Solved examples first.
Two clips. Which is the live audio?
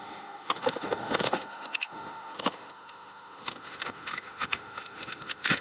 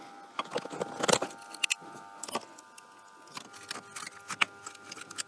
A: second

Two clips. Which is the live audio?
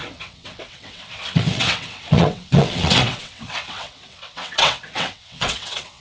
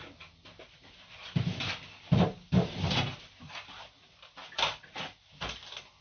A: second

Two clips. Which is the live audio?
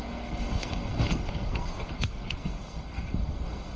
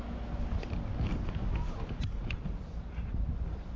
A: second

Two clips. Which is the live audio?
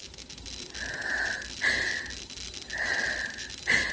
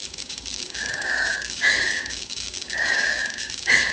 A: first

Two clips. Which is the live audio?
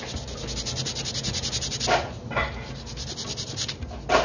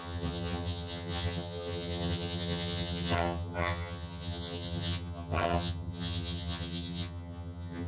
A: first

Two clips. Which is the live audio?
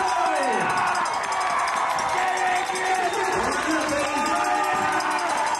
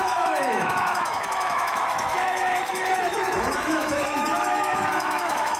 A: first